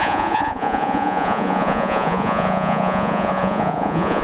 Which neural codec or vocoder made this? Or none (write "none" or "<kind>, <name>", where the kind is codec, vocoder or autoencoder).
vocoder, Vocos